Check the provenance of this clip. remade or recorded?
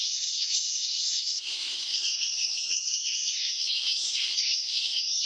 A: remade